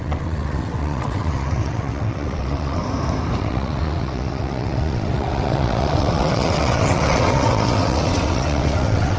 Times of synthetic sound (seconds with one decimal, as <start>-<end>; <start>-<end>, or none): 0.0-2.8; 3.4-9.2